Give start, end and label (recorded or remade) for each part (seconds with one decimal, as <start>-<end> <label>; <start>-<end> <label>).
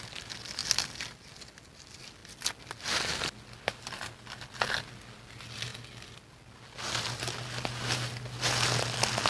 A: 0.0-9.3 recorded